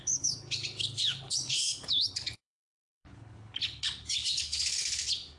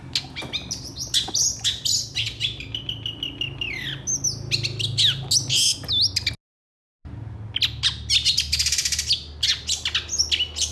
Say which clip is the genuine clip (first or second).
second